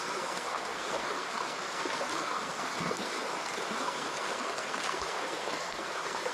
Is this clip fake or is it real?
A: fake